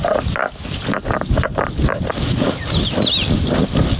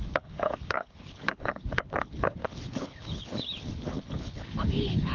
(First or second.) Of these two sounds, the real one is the first